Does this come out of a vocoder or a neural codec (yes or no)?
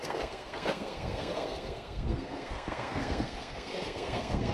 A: yes